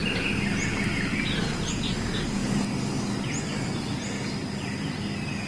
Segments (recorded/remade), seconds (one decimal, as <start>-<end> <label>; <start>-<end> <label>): 0.0-1.7 recorded; 1.7-2.4 remade; 2.4-5.5 recorded